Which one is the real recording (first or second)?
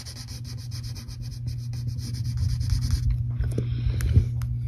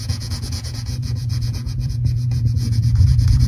first